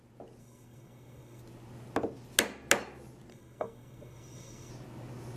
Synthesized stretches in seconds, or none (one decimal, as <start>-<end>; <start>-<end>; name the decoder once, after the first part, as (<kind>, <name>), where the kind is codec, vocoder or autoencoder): 0.4-1.4 (codec, SNAC); 3.3-4.7